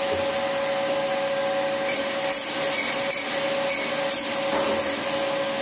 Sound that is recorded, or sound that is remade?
recorded